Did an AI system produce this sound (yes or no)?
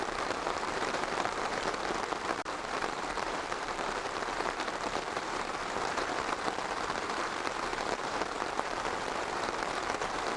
yes